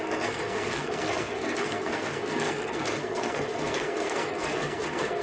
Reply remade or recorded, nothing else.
remade